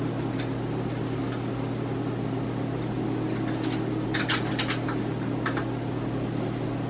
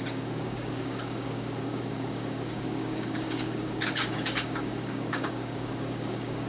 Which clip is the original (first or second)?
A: first